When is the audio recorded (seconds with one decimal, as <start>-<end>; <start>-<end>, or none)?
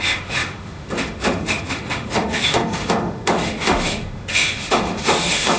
none